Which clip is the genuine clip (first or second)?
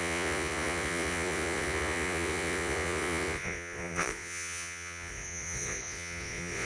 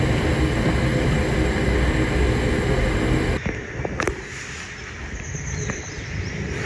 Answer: second